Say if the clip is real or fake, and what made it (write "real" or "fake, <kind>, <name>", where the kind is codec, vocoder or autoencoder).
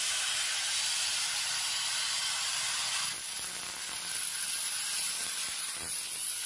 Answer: real